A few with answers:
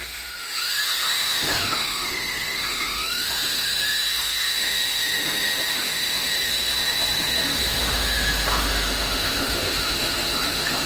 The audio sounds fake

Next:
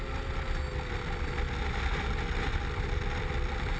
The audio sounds real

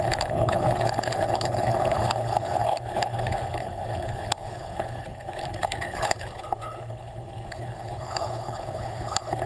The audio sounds fake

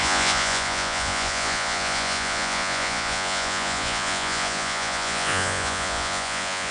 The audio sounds fake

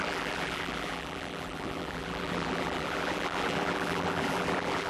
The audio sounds fake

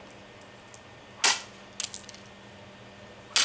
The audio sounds real